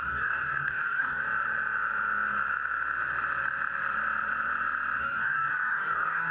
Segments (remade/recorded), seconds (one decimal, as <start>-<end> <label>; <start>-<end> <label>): 0.0-1.2 remade; 1.2-5.0 recorded; 5.0-6.3 remade